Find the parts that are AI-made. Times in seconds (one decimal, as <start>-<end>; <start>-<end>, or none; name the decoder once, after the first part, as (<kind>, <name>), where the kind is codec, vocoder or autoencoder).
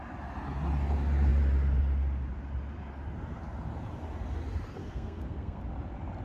4.8-5.6 (codec, SNAC)